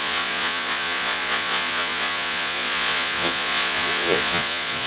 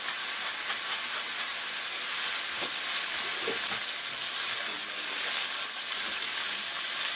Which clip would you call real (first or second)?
second